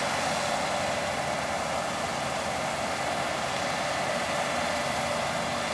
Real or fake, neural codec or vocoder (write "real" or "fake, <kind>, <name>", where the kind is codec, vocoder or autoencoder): real